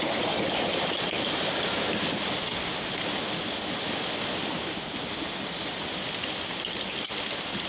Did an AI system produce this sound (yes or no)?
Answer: no